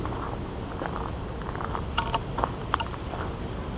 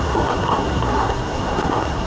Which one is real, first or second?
first